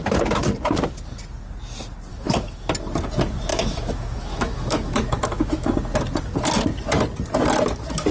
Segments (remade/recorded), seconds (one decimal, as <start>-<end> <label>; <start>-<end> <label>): 0.0-2.1 recorded; 2.1-2.6 remade; 2.6-3.5 recorded; 3.5-5.7 remade; 5.7-8.1 recorded